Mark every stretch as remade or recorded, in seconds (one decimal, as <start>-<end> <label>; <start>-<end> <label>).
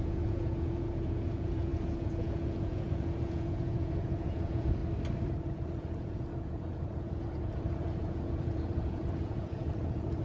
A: 0.0-4.8 remade; 4.8-5.3 recorded; 5.3-10.2 remade